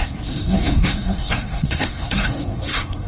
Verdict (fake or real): fake